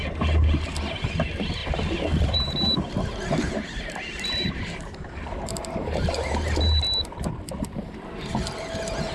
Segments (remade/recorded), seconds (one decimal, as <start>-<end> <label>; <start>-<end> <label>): 0.0-1.6 recorded; 1.6-6.6 remade; 6.6-9.1 recorded